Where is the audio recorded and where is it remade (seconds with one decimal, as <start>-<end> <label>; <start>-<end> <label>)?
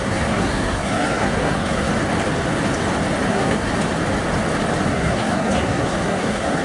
0.0-1.9 remade; 1.9-3.3 recorded; 3.3-3.7 remade; 3.7-4.9 recorded; 4.9-6.6 remade